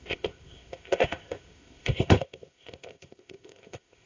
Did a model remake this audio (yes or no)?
yes